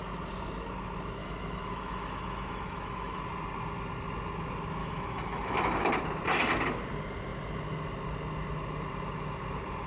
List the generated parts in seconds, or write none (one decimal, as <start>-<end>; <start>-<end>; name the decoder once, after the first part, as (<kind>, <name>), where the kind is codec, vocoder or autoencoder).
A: 1.2-3.2 (autoencoder, DAC-VAE); 4.8-5.9